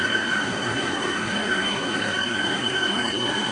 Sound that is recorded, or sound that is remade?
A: remade